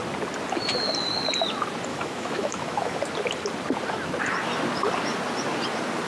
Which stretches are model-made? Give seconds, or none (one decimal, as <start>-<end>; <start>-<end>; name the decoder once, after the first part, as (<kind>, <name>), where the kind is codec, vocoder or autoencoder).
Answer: 1.9-3.0 (autoencoder, DAC-VAE)